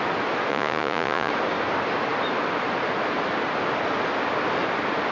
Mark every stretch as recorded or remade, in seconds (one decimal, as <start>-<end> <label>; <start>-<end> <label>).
0.0-0.5 recorded; 0.5-1.3 remade; 1.3-5.1 recorded